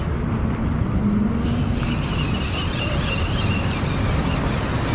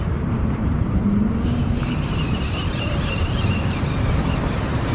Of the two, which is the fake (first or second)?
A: second